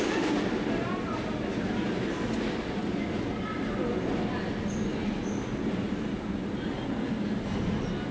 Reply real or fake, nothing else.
real